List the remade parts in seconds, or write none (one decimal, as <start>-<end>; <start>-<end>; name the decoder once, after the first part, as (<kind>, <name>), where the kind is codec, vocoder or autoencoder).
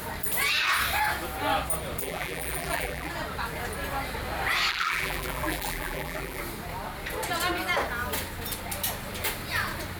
2.0-3.1 (vocoder, BigVGAN v2); 4.7-6.4